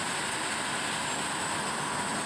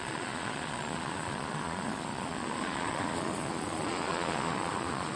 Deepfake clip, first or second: second